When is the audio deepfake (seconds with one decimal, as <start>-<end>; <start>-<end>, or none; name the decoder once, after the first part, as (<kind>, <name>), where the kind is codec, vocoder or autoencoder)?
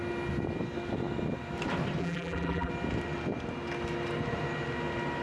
2.0-2.7 (vocoder, BigVGAN v2)